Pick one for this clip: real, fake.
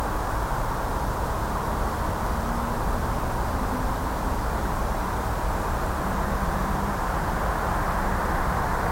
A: real